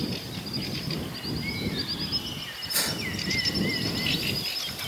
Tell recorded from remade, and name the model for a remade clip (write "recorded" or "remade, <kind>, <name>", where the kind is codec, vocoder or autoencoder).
recorded